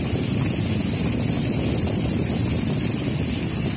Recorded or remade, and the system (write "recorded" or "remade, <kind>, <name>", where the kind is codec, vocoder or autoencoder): remade, vocoder, BigVGAN v2